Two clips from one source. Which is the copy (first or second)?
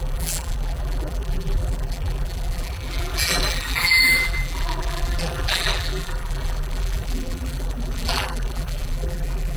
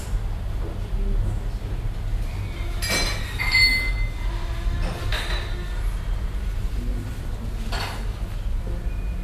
first